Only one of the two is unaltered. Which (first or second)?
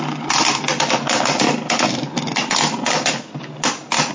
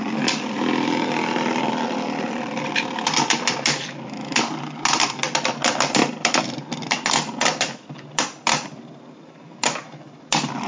first